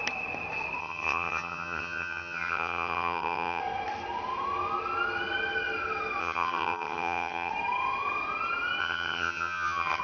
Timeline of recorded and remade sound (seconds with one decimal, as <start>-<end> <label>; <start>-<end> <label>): 0.0-0.8 recorded; 0.8-3.6 remade; 3.6-6.2 recorded; 6.2-7.5 remade; 7.5-8.8 recorded; 8.8-10.0 remade

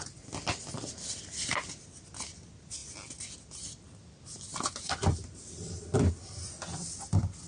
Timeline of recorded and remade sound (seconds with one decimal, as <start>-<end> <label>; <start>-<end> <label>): 0.0-7.5 recorded